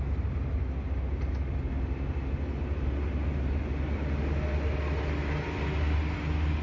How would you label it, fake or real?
real